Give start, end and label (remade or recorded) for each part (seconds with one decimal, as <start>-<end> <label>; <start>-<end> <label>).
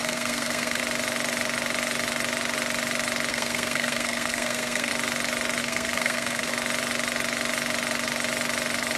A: 0.0-0.8 remade; 0.8-3.3 recorded; 3.3-4.9 remade; 4.9-5.6 recorded; 5.6-6.5 remade; 6.5-9.0 recorded